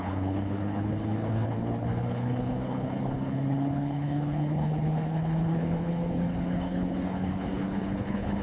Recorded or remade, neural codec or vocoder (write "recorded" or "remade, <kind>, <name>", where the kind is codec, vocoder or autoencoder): remade, codec, HILCodec